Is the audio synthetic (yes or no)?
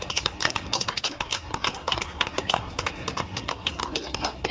yes